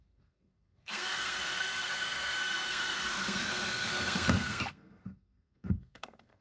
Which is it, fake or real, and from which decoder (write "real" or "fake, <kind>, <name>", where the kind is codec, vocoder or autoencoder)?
fake, codec, SNAC